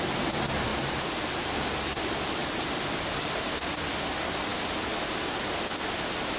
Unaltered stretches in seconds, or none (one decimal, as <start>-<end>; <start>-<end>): 0.0-0.7; 1.5-2.4; 3.9-6.4